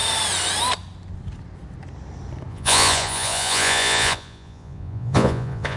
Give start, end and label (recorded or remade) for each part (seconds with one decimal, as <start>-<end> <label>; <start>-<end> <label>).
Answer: 0.0-2.5 recorded; 2.5-5.8 remade